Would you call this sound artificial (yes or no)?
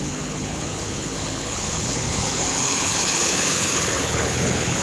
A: yes